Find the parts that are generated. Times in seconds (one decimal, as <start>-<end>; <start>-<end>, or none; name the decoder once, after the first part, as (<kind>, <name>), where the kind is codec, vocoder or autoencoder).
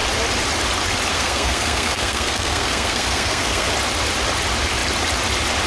1.1-3.7 (codec, SNAC)